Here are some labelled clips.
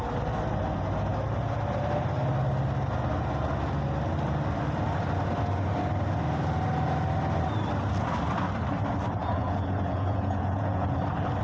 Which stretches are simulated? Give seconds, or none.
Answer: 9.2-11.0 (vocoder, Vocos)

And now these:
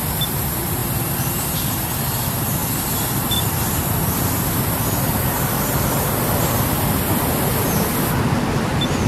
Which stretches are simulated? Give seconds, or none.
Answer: none